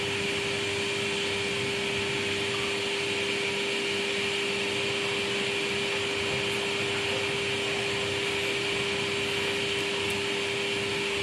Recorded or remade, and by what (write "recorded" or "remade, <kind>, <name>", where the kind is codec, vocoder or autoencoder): recorded